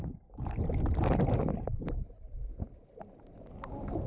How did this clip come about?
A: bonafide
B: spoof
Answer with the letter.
A